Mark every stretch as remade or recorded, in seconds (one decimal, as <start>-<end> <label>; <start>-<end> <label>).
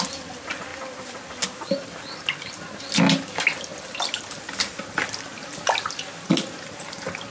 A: 0.0-7.3 recorded